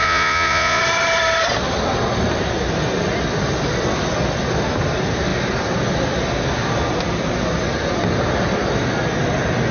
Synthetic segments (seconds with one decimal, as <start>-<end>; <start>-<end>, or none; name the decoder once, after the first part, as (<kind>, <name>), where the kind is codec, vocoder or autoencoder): 0.0-0.8 (vocoder, Vocos)